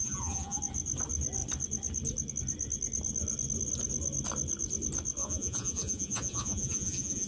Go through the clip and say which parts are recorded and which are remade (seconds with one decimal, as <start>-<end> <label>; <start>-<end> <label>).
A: 0.0-0.6 remade; 0.6-5.2 recorded; 5.2-7.3 remade